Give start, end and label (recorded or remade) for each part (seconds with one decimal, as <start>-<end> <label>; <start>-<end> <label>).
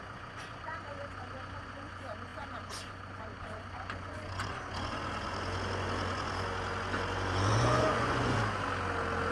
0.0-8.4 remade; 8.4-9.3 recorded